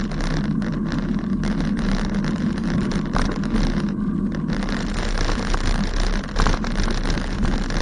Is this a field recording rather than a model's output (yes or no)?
yes